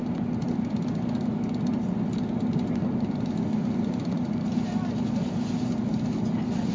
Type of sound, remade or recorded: recorded